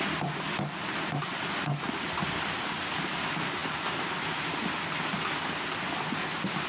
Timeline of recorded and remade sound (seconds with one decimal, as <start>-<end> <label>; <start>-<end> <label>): 0.0-6.7 recorded